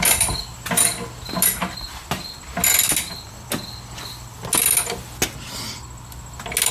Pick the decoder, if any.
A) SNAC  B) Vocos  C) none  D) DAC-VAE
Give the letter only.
C